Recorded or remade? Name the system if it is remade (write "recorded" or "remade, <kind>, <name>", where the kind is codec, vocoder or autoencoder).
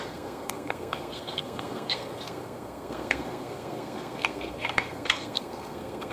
remade, codec, SNAC